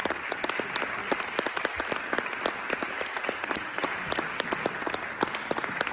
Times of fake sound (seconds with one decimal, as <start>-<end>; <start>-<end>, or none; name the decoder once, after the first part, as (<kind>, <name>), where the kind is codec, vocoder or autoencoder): none